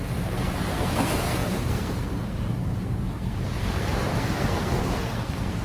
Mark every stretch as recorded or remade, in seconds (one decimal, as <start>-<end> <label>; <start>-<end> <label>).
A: 0.0-5.6 remade